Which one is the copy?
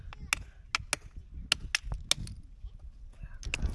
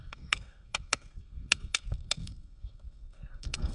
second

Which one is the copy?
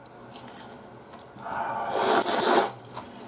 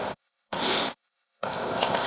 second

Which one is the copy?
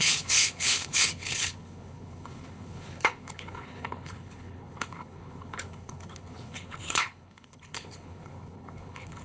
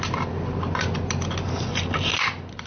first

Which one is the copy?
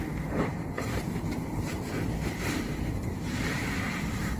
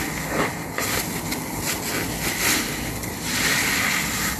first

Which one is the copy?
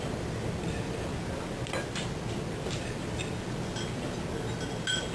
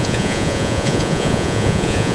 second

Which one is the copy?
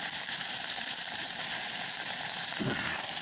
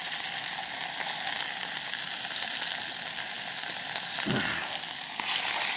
first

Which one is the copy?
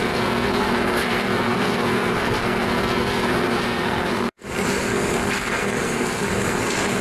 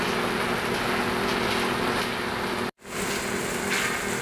first